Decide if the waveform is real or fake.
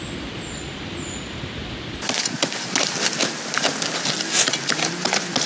real